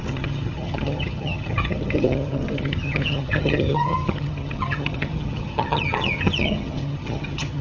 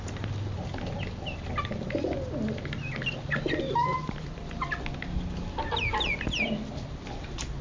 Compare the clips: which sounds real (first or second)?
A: second